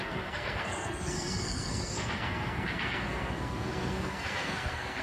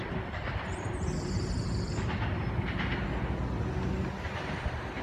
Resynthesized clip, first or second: first